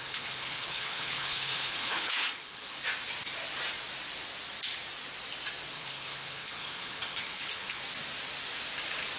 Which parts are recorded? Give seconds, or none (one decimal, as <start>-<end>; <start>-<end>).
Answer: 2.8-5.7; 7.8-9.2